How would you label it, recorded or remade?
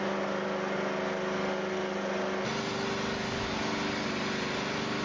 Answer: recorded